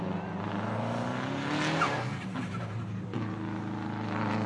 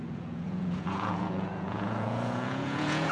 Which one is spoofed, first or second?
second